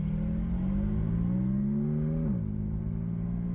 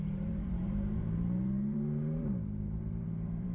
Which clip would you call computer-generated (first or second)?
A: second